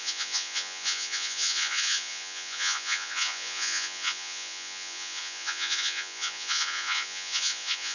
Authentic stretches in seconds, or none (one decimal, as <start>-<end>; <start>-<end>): none